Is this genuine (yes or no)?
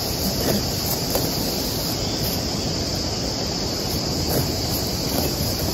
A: yes